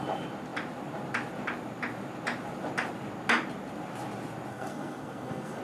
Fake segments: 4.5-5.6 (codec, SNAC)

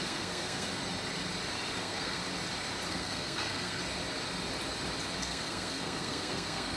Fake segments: 0.0-0.7 (codec, SNAC); 1.8-2.2; 2.9-3.8; 5.2-6.8

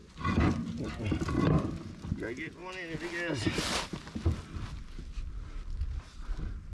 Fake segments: 0.0-0.5 (vocoder, Vocos)

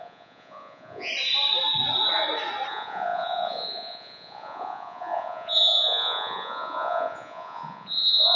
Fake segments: 0.0-1.1 (vocoder, Vocos); 2.7-8.4

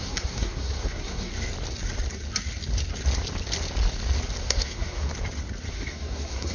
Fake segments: 0.0-1.3 (codec, SNAC); 4.4-5.1; 5.7-6.5

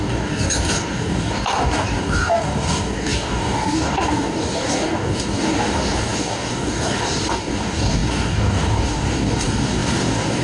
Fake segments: 0.0-10.4 (codec, DAC)